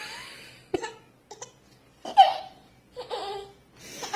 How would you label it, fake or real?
real